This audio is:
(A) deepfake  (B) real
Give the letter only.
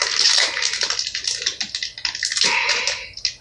B